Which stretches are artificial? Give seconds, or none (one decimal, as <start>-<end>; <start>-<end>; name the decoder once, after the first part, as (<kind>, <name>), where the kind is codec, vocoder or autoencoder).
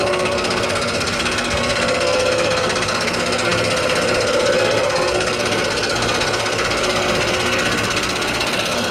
0.0-8.9 (codec, SNAC)